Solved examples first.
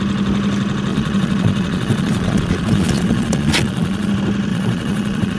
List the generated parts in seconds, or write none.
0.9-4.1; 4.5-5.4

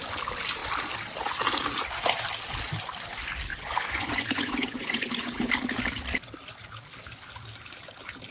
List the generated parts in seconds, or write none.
3.5-5.5